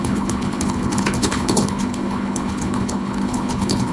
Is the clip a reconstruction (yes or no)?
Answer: yes